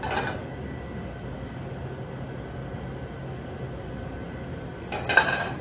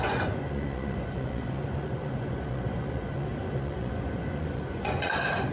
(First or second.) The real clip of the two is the first